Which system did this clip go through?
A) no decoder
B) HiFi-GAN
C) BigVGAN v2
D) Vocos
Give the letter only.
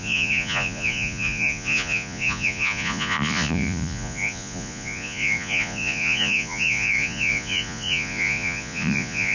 D